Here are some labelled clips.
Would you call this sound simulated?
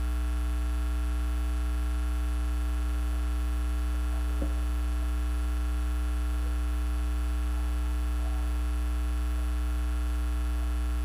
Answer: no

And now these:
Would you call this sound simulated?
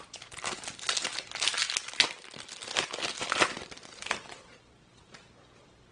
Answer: no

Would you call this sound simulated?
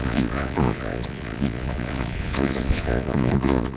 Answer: yes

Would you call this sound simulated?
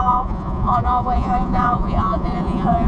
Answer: yes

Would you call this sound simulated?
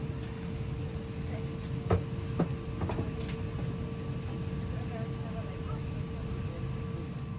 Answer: no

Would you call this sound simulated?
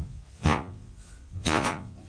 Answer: yes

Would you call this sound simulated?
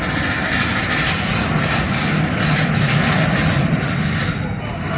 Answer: no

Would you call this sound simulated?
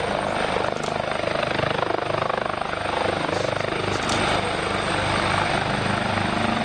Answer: no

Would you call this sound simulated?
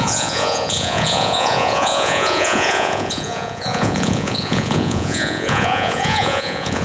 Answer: yes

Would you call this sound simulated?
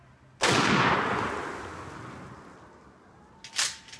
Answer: no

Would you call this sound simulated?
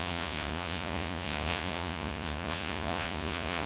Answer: yes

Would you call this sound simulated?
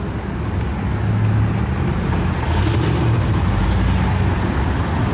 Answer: no